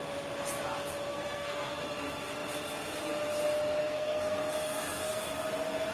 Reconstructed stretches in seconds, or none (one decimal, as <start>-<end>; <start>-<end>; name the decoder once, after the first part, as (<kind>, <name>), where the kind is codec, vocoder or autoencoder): 1.1-1.8 (codec, SNAC); 3.8-5.2